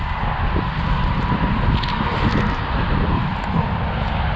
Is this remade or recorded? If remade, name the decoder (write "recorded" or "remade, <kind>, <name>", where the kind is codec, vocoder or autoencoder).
recorded